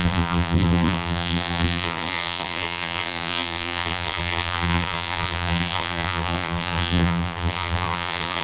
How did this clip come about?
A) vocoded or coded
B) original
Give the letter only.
A